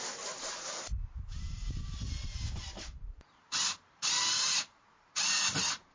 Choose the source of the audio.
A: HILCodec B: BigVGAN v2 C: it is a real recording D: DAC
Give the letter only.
B